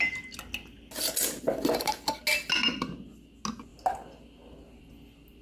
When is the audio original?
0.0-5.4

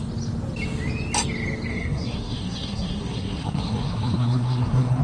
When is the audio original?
0.0-1.7

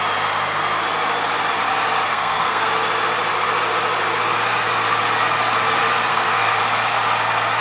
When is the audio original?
0.0-2.1; 2.7-6.1; 6.6-7.6

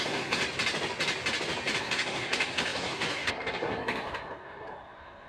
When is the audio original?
0.4-1.8

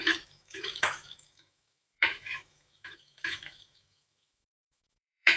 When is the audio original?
none

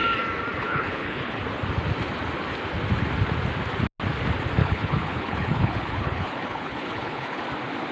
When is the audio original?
0.0-0.6; 1.4-4.6; 7.4-7.9